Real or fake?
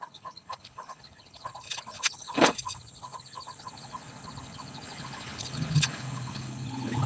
fake